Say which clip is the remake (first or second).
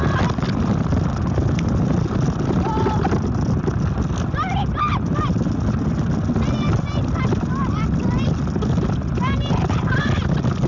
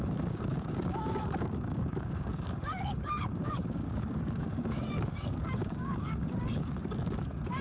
second